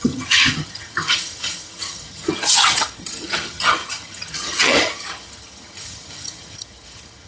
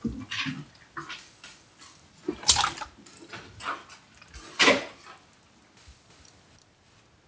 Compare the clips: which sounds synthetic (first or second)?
first